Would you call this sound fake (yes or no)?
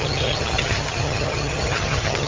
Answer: yes